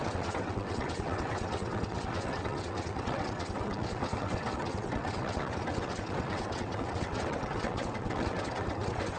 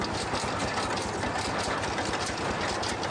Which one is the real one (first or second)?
second